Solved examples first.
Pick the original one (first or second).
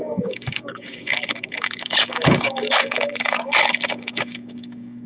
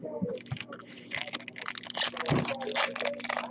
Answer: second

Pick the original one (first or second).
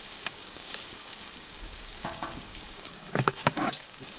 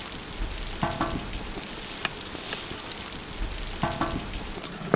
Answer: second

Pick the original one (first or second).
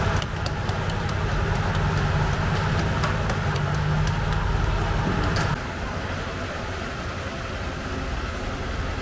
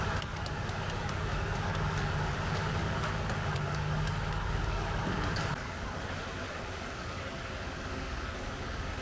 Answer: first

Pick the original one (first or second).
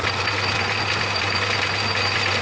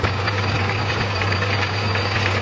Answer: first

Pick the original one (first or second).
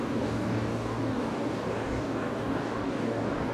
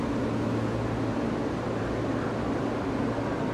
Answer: second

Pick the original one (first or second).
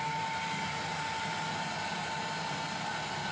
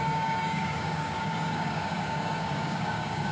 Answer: first